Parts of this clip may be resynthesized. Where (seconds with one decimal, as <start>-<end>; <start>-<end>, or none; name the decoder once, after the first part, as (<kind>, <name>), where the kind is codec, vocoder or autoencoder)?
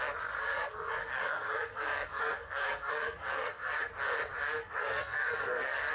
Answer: 0.4-3.9 (codec, SNAC); 4.6-5.9